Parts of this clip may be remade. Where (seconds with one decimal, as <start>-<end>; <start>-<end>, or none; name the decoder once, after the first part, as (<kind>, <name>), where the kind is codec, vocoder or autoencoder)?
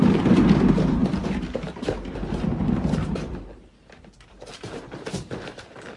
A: 0.0-1.0 (vocoder, BigVGAN v2); 4.5-6.0